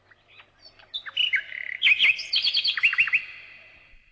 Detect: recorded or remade recorded